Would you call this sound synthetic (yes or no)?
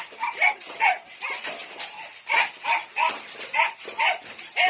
no